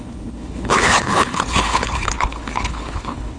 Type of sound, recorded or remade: remade